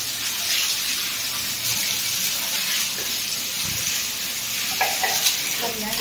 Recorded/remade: recorded